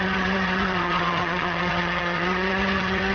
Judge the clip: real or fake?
fake